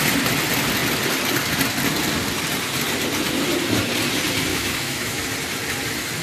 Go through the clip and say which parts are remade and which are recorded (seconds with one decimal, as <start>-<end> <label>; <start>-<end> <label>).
0.0-4.5 recorded; 4.5-5.2 remade; 5.2-6.2 recorded